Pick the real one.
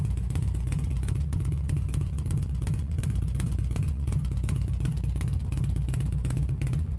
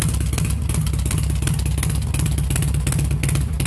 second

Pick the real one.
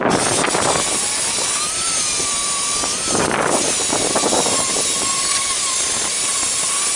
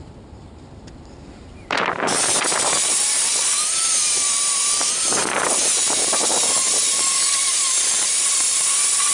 first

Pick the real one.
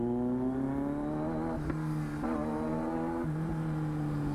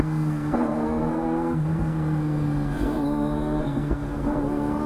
first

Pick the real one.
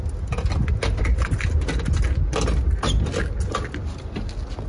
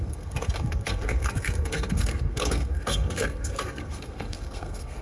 first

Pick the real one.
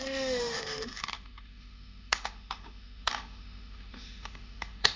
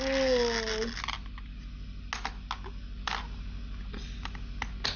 second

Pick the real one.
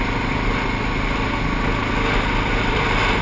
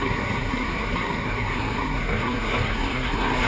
first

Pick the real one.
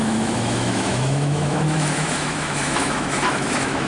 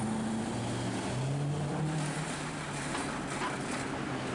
second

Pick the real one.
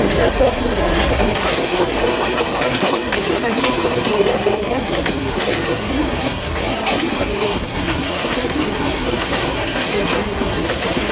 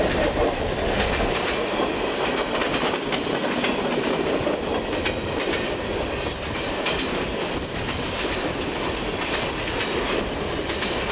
second